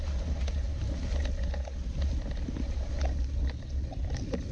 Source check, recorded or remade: recorded